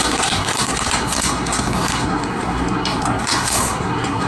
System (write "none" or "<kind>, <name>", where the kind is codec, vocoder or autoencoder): codec, SNAC